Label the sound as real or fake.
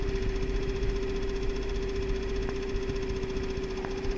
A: real